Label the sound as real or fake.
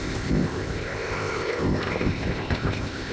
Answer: fake